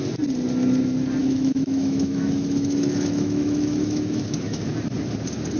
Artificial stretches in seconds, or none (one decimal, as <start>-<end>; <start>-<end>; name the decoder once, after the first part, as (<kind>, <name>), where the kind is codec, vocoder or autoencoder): 1.2-4.6 (autoencoder, DAC-VAE)